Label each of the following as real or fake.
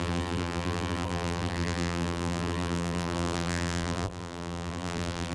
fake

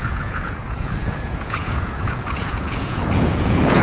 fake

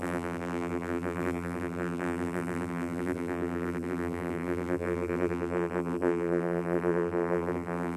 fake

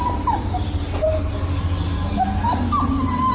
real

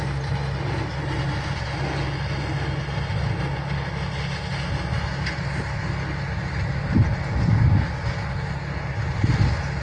real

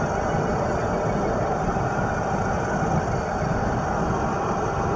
real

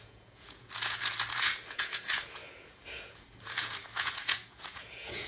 fake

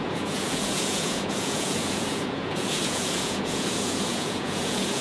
fake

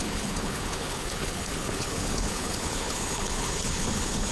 fake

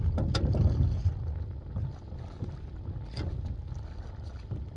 real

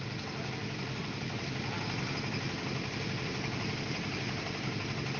real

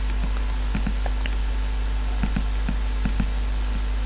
real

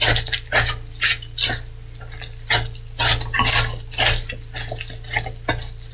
real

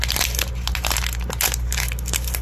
real